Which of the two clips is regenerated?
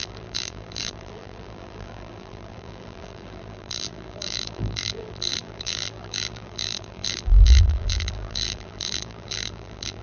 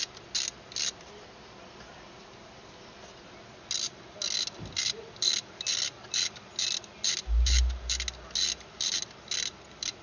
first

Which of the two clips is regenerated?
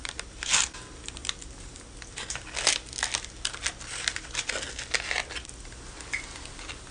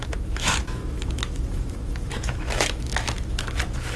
second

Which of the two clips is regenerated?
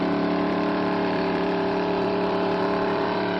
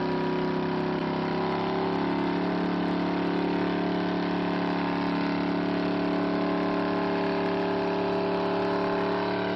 first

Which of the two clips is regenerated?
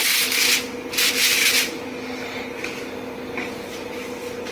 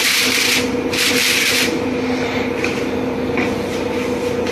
second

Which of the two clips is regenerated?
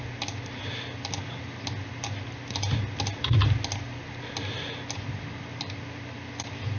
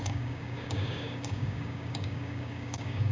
second